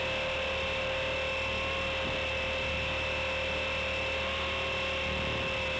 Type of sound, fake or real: real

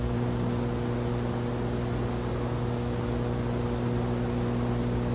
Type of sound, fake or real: real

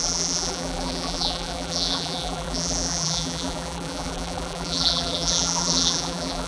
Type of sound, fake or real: fake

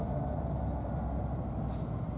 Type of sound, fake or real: real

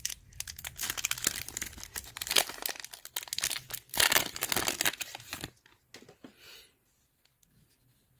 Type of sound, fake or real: real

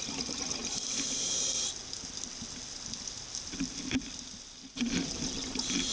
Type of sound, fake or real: real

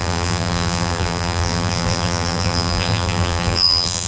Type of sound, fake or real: fake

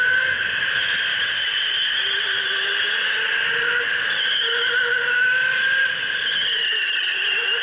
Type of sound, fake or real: real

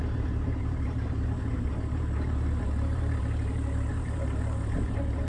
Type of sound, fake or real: fake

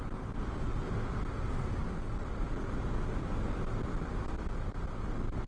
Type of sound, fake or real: real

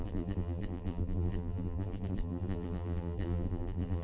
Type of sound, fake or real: fake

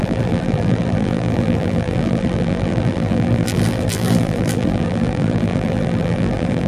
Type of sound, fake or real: fake